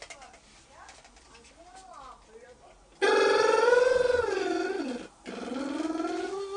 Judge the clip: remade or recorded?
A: recorded